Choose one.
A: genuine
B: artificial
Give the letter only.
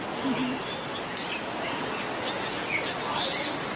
A